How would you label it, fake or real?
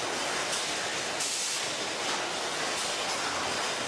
real